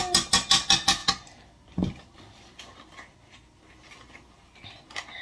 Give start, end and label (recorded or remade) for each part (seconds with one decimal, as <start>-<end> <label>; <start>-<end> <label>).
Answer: 0.0-1.0 recorded; 1.0-2.9 remade; 2.9-5.2 recorded